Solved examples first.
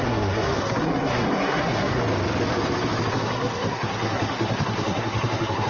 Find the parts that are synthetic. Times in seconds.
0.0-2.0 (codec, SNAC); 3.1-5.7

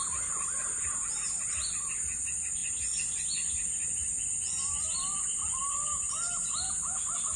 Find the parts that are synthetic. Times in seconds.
none

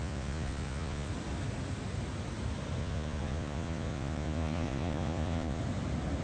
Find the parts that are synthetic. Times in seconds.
0.0-1.1 (vocoder, Vocos); 2.8-5.6

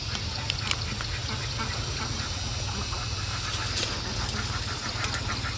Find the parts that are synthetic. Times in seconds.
none

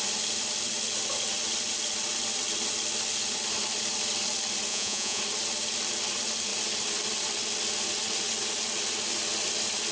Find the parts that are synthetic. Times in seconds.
4.7-5.2 (vocoder, Vocos)

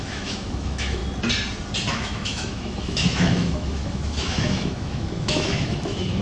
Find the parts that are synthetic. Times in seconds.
0.0-1.0 (autoencoder, DAC-VAE); 1.9-6.2